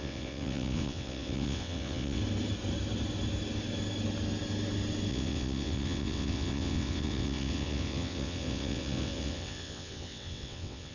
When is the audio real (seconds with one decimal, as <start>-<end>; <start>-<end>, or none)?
2.2-5.1